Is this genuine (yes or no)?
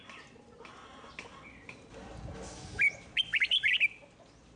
yes